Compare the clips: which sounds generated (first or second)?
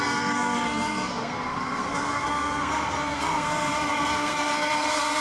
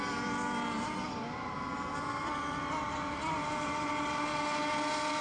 first